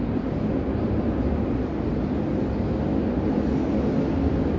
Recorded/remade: recorded